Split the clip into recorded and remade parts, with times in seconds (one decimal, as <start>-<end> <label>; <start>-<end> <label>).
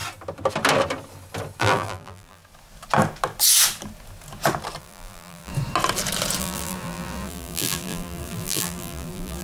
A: 0.0-1.6 recorded; 1.6-2.4 remade; 2.4-4.8 recorded; 4.8-5.5 remade; 5.5-6.4 recorded; 6.4-9.4 remade